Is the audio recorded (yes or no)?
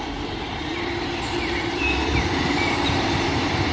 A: no